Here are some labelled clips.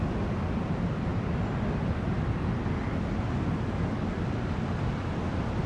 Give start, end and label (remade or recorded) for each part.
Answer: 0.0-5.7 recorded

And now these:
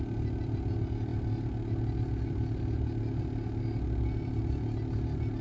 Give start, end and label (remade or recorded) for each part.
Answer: 0.0-5.4 recorded

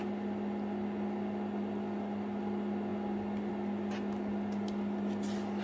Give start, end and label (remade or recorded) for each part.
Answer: 0.0-5.6 recorded

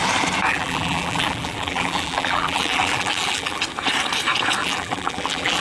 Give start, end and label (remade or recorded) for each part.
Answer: 0.0-0.5 recorded; 0.5-3.6 remade; 3.6-4.6 recorded; 4.6-5.6 remade